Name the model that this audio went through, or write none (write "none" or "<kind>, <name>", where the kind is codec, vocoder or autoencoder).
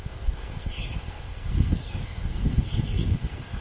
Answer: codec, SNAC